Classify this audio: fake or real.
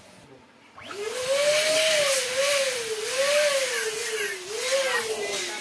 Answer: real